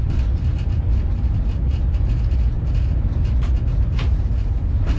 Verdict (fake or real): fake